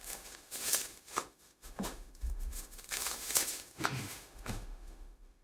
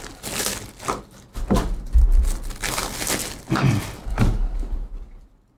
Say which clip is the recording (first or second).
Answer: second